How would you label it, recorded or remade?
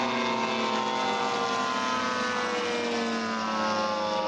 recorded